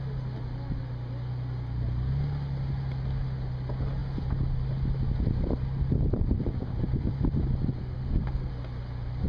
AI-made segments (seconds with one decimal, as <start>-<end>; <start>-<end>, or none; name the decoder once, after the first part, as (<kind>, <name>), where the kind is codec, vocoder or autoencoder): 7.8-8.5 (codec, SNAC)